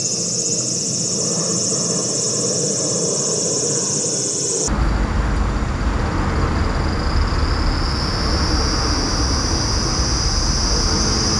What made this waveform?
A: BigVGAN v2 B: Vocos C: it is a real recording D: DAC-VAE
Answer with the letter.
C